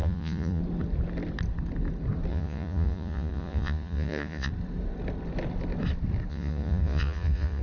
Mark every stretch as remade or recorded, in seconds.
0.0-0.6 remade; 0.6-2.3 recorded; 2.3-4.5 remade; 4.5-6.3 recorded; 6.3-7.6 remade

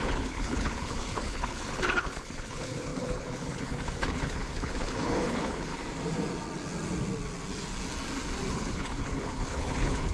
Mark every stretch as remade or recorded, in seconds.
0.0-5.7 remade; 5.7-8.5 recorded; 8.5-10.1 remade